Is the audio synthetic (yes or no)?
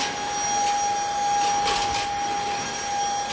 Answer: no